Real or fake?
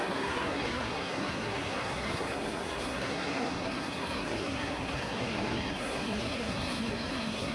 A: fake